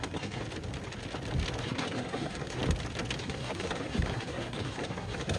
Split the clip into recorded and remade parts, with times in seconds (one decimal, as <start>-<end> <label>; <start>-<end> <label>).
0.0-0.4 remade; 0.4-1.6 recorded; 1.6-2.6 remade; 2.6-3.2 recorded; 3.2-5.4 remade